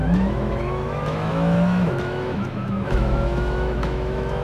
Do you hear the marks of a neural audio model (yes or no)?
yes